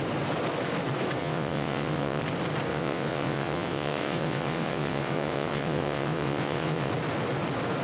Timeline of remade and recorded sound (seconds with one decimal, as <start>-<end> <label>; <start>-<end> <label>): 0.0-1.2 recorded; 1.2-2.2 remade; 2.2-2.7 recorded; 2.7-6.9 remade; 6.9-7.8 recorded